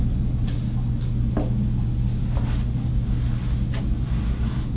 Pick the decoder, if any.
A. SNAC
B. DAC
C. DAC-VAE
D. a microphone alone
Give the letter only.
D